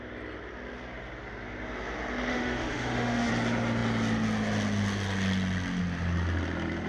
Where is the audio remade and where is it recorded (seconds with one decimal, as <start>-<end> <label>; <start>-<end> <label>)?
0.0-2.3 recorded; 2.3-3.3 remade; 3.3-6.9 recorded